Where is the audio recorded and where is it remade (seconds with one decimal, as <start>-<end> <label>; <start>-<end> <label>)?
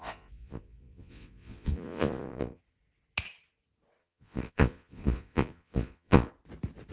0.0-2.6 remade; 2.6-4.0 recorded; 4.0-6.3 remade; 6.3-6.9 recorded